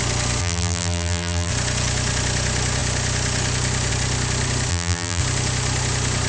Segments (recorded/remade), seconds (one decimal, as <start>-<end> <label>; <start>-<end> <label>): 0.0-0.4 recorded; 0.4-1.5 remade; 1.5-4.7 recorded; 4.7-5.2 remade; 5.2-6.3 recorded